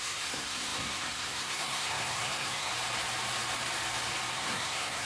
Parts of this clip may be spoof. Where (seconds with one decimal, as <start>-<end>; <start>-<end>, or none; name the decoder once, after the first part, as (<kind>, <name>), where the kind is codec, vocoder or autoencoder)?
0.0-2.7 (codec, SNAC); 4.3-5.1